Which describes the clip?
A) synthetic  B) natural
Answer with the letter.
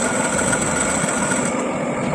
B